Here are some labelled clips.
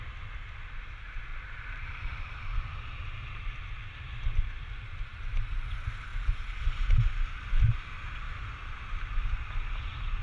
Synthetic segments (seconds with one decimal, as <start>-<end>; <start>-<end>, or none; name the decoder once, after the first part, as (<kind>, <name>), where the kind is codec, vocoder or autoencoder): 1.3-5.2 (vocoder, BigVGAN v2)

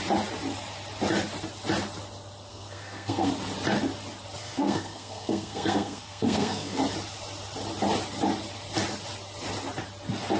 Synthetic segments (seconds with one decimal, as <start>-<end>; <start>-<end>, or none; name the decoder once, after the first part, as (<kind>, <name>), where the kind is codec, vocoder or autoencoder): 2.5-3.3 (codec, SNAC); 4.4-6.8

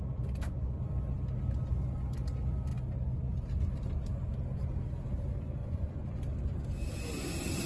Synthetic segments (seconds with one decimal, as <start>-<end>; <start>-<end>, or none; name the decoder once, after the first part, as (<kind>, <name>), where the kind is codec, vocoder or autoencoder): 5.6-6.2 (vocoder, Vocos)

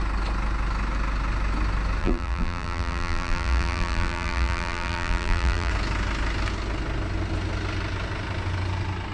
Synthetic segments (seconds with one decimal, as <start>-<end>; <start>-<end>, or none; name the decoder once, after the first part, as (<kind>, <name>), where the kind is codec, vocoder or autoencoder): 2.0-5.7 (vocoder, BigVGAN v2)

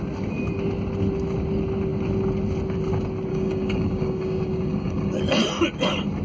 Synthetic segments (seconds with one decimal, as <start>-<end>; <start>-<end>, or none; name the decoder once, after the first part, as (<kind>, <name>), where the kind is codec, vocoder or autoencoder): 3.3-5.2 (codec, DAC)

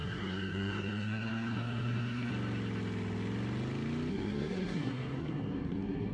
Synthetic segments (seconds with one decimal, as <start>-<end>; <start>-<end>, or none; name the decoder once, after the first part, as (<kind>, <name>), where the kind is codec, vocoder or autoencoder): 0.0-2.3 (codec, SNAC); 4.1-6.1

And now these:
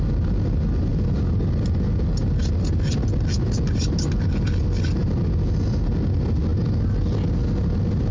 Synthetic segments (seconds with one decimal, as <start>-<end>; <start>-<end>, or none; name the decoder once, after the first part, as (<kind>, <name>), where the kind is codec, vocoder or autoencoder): none

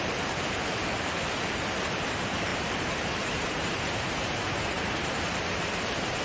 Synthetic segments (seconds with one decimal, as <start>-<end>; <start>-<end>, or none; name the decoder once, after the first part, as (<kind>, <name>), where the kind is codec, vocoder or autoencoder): 0.0-6.2 (vocoder, BigVGAN v2)